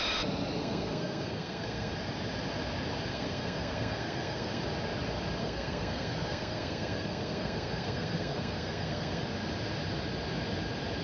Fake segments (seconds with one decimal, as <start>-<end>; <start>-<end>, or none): 0.6-1.9; 3.1-4.6; 5.4-9.2